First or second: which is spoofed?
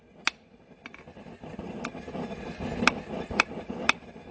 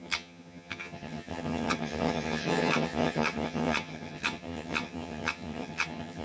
second